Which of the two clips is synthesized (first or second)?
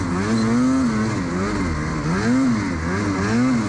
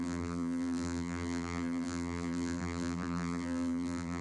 second